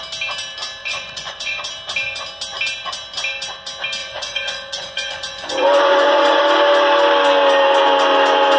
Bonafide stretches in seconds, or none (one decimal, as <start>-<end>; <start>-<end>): 0.0-0.8; 1.6-4.0; 6.4-8.6